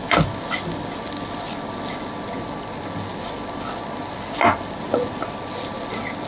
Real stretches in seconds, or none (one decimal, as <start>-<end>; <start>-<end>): 0.0-6.3